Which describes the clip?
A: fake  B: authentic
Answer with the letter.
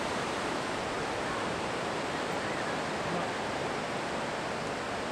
B